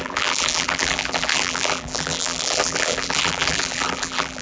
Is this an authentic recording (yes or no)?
no